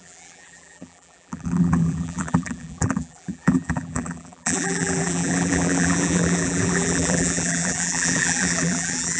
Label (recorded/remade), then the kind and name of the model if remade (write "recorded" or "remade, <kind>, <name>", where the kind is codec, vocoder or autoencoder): remade, vocoder, BigVGAN v2